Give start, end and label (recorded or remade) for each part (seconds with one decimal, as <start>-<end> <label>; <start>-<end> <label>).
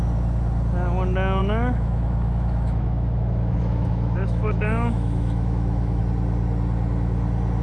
0.0-1.4 recorded; 1.4-6.0 remade; 6.0-7.6 recorded